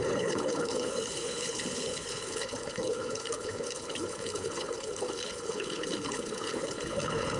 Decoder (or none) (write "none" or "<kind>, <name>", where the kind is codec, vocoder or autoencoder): codec, HILCodec